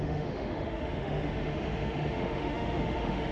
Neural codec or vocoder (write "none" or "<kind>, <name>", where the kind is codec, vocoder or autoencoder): autoencoder, DAC-VAE